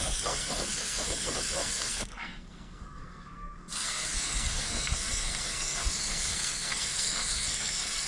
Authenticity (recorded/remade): remade